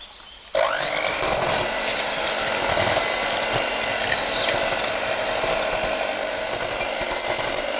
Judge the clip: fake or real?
real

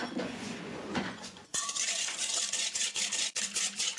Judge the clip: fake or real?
fake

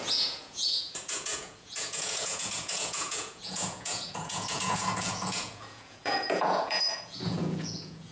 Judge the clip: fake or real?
fake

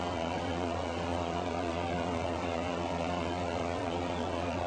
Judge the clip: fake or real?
fake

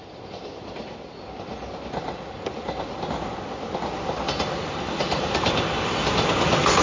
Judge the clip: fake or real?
real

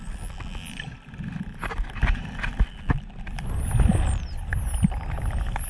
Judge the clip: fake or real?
real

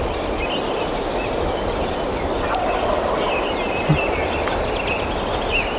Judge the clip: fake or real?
real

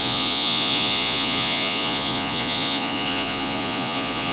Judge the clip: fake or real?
fake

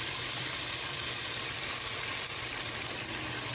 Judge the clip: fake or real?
real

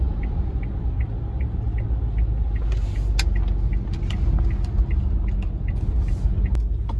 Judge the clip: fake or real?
real